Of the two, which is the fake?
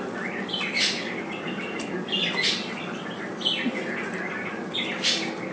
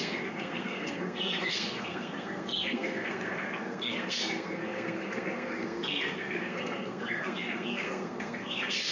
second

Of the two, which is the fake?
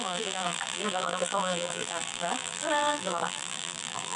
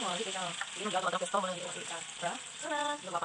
first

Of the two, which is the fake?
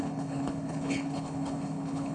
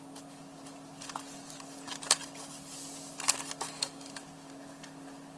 first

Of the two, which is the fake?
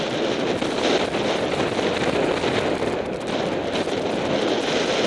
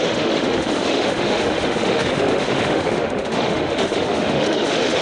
second